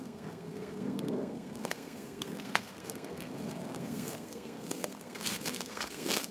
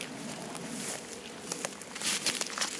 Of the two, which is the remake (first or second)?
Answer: first